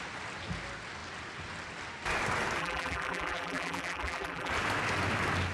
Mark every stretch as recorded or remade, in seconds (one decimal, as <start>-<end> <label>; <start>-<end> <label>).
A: 0.0-2.6 recorded; 2.6-4.5 remade; 4.5-5.5 recorded